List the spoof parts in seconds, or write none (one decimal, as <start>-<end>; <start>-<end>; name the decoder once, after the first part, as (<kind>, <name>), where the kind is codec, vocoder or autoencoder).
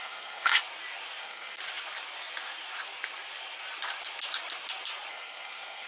0.0-0.5 (codec, SNAC); 1.2-1.6; 5.1-5.9